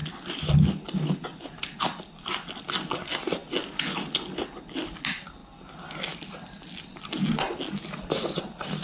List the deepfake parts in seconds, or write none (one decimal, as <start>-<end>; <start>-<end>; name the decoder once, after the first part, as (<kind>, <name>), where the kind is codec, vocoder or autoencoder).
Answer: none

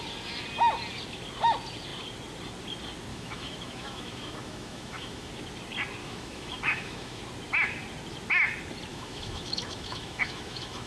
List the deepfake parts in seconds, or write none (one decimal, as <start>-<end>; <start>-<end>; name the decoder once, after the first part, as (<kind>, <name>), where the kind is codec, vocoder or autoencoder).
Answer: 3.1-5.3 (autoencoder, DAC-VAE); 6.0-7.2; 8.9-10.9